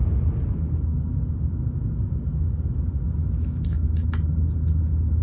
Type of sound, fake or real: real